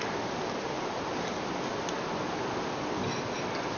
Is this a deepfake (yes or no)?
no